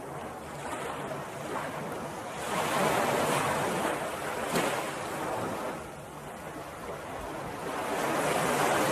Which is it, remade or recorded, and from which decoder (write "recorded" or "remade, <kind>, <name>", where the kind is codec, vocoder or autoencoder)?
recorded